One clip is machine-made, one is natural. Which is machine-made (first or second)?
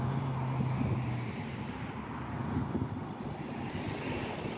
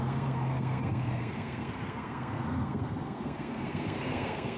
second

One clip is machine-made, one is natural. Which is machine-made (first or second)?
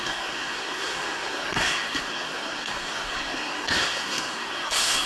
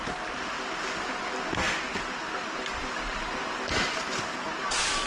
first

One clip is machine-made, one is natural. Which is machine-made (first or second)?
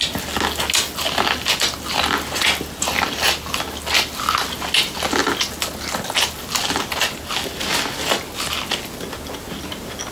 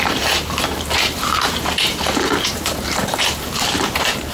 second